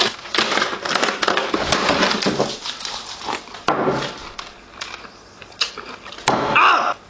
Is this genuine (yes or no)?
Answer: yes